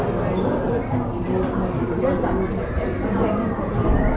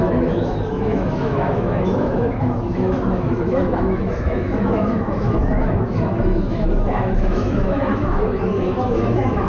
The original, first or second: first